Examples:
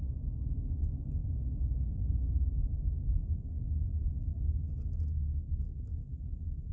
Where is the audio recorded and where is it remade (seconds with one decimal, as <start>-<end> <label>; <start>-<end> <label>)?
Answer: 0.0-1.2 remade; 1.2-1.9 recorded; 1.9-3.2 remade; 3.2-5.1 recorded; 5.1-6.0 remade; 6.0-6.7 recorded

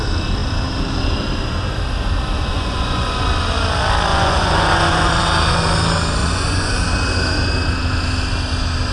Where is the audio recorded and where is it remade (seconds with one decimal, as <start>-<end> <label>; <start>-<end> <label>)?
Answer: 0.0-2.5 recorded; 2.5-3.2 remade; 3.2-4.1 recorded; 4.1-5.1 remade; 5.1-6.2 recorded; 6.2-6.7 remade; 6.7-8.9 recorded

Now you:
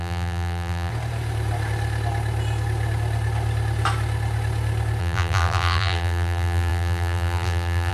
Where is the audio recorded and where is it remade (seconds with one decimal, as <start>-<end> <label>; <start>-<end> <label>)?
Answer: 0.0-0.9 remade; 0.9-5.0 recorded; 5.0-7.9 remade